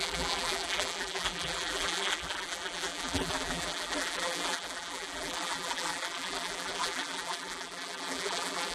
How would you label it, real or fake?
fake